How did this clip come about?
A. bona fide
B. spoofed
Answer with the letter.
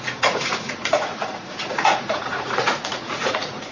B